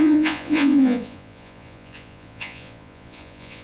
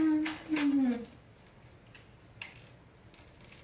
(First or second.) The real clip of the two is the second